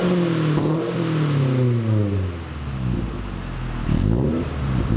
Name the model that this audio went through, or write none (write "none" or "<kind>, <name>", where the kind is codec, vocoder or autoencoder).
none